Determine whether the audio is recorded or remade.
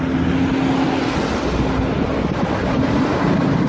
recorded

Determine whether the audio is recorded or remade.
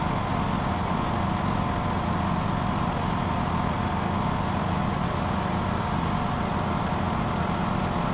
recorded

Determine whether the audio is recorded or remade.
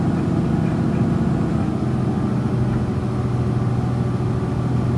recorded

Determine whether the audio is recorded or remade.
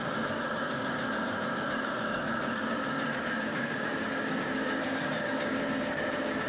remade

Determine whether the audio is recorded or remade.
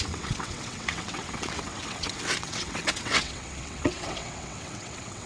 remade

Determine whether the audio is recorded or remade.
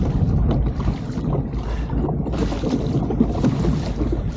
recorded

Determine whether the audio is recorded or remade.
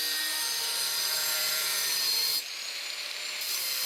remade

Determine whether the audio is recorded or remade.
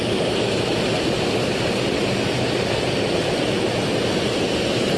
recorded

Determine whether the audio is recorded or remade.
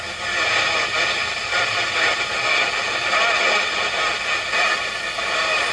recorded